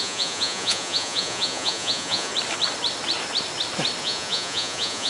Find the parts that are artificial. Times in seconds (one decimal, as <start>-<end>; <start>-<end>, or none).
0.0-2.3; 4.0-5.1